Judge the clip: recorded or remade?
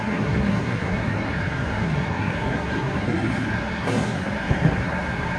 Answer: remade